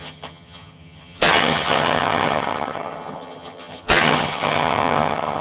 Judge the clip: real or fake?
fake